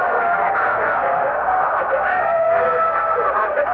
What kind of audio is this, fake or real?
fake